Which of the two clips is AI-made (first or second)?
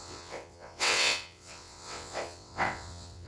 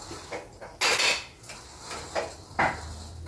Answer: first